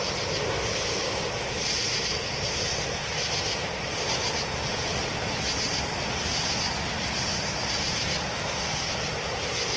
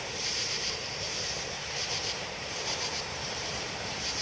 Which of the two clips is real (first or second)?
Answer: first